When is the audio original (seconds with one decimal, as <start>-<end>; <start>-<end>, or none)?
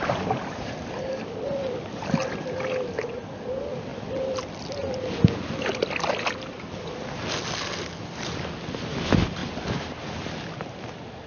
0.0-11.3